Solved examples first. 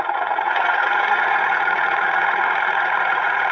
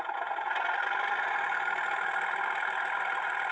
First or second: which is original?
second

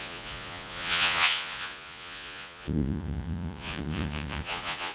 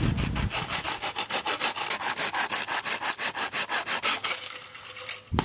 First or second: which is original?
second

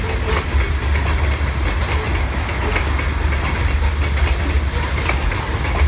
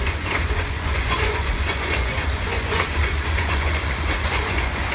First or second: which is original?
first